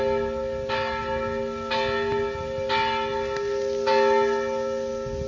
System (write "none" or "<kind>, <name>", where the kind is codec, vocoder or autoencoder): none